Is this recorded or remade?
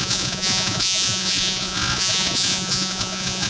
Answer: remade